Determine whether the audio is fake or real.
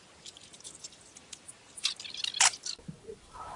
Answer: real